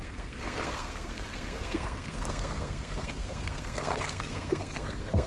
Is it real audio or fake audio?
fake